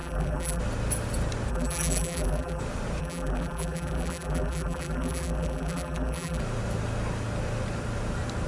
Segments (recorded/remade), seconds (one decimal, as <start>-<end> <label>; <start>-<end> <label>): 0.0-0.6 remade; 0.6-1.5 recorded; 1.5-2.6 remade; 2.6-3.0 recorded; 3.0-6.4 remade; 6.4-8.5 recorded